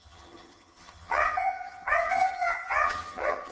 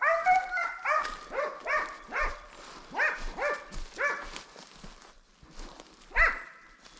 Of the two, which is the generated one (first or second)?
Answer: first